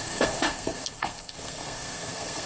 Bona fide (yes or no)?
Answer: no